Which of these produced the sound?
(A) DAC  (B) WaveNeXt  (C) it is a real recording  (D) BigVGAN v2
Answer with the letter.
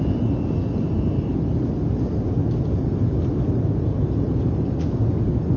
C